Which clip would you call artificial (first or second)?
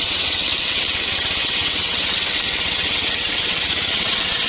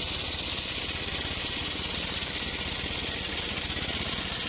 first